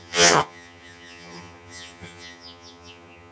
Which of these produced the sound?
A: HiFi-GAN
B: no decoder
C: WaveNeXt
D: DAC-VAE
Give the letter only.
A